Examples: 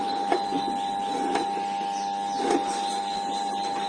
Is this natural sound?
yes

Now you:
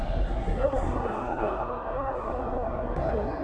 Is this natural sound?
no